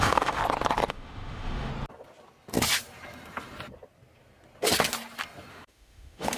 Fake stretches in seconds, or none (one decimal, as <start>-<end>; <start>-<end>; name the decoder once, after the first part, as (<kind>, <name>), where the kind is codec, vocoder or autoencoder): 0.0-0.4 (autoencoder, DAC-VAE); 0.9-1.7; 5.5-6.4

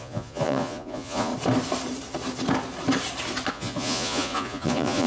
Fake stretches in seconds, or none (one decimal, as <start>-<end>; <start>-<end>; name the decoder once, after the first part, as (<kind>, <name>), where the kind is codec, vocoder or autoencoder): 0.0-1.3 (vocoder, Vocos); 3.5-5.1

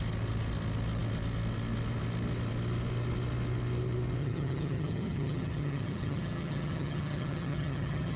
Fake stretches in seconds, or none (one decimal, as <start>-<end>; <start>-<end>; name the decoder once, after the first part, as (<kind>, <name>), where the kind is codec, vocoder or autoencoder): 4.2-8.2 (vocoder, HiFi-GAN)

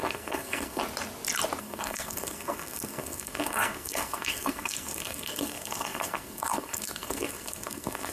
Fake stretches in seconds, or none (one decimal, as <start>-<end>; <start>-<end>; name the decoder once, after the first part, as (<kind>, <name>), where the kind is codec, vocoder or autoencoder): 0.0-0.8 (codec, SNAC); 1.6-8.1

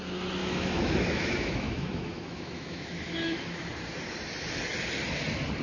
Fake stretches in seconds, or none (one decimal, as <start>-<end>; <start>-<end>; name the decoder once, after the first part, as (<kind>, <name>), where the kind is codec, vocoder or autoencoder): 0.4-3.7 (autoencoder, DAC-VAE)

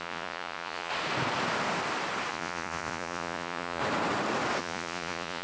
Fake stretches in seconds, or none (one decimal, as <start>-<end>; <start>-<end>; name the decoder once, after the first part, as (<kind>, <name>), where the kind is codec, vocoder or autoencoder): 0.0-0.9 (vocoder, Vocos); 2.3-3.8; 4.6-5.4

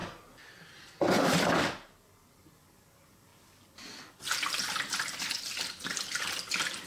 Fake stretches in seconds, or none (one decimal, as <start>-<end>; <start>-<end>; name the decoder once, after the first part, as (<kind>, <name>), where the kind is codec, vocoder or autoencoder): none

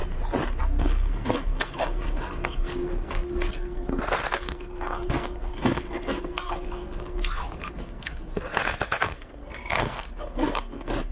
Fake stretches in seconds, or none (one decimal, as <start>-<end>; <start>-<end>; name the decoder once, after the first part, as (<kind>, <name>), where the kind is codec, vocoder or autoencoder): 0.6-11.1 (codec, SNAC)